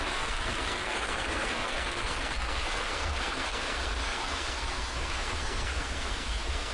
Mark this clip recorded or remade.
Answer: remade